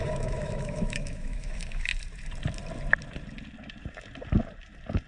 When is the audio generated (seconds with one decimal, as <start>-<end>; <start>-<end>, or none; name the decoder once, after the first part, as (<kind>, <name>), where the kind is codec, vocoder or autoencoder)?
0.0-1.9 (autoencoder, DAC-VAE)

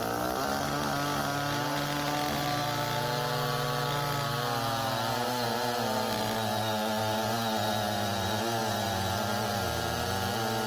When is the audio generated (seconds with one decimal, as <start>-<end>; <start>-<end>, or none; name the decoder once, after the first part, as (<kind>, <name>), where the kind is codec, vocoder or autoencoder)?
none

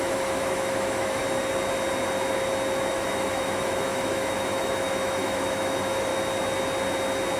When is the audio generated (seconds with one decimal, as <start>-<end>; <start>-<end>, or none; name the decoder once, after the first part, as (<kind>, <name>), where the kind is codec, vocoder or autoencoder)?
0.0-1.2 (autoencoder, DAC-VAE); 2.9-6.1

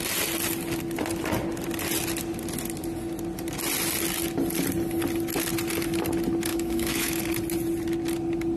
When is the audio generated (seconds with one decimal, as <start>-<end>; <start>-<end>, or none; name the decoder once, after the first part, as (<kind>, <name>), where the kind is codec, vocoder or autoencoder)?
6.5-7.2 (autoencoder, DAC-VAE)

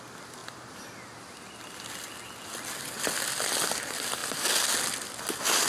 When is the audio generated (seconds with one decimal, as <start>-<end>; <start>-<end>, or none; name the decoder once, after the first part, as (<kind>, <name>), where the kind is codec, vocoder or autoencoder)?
none

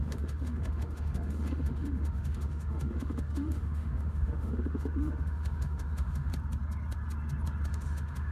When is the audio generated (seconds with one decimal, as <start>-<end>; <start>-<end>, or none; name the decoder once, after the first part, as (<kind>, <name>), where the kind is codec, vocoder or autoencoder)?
0.0-6.3 (autoencoder, DAC-VAE); 7.7-8.3